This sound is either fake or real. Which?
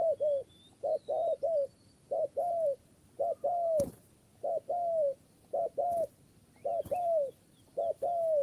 real